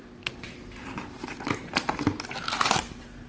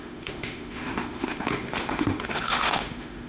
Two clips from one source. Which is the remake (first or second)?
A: second